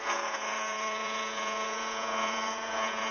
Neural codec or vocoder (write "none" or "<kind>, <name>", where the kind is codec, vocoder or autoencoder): vocoder, Vocos